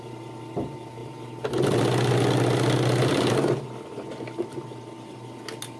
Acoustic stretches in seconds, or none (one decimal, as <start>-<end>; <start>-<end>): 0.0-1.0; 1.5-5.8

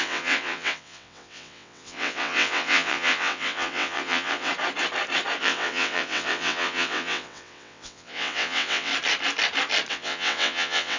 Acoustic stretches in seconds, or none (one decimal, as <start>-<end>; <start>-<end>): 4.5-5.4; 8.9-9.9

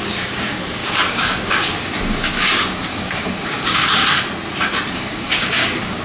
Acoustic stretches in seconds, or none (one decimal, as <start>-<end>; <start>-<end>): 4.0-4.9

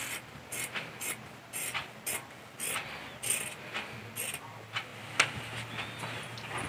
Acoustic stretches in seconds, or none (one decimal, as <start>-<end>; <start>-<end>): 0.0-6.7

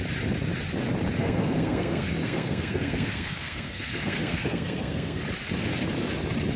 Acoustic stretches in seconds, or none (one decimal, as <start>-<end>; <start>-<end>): 0.0-1.2; 5.2-6.6